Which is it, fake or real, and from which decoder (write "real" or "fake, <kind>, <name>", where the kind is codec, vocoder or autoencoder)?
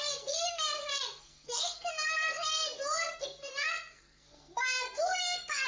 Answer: fake, codec, SNAC